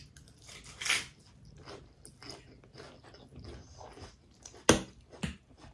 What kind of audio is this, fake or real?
real